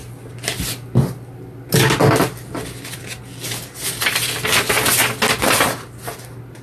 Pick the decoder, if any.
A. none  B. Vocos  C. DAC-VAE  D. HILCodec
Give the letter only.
A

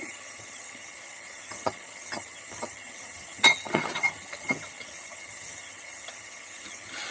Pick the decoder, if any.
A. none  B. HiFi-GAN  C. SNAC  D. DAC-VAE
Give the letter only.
B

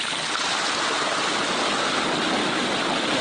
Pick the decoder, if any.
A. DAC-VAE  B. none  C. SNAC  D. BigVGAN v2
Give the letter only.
B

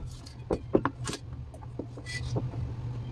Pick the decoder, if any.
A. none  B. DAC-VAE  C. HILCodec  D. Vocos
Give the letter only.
A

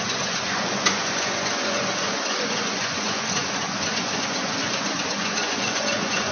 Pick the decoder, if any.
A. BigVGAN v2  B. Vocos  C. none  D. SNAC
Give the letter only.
B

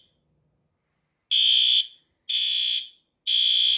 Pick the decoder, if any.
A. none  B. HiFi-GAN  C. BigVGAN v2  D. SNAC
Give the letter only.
A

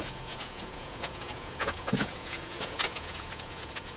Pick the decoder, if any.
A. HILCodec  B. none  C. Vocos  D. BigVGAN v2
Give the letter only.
C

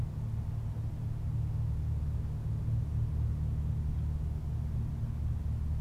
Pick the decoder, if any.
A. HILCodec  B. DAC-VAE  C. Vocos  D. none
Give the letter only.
D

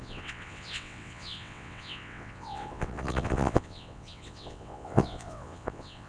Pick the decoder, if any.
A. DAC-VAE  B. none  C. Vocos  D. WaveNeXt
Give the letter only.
D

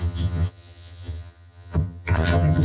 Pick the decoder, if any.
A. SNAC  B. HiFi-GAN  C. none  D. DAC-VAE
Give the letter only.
B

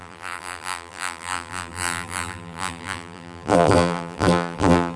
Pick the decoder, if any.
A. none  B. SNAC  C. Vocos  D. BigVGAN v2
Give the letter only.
D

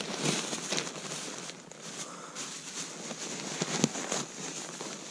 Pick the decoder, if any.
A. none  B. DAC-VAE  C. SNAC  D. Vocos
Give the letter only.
A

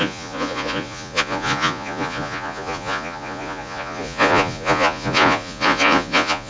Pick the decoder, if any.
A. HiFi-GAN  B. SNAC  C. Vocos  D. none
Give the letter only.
C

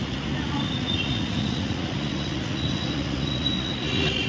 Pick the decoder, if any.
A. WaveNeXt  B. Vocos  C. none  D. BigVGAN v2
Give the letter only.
B